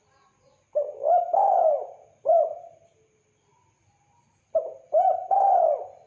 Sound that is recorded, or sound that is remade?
recorded